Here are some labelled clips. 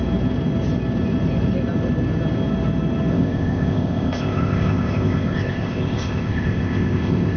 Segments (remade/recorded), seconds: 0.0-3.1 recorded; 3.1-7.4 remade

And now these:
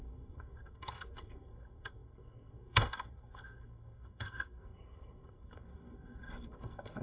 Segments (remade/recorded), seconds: 0.0-7.0 remade